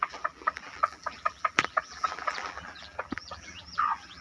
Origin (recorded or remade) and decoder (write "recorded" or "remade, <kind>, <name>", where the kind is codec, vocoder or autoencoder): remade, vocoder, BigVGAN v2